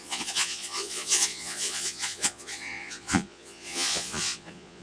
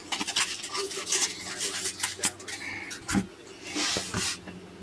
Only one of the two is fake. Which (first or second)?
first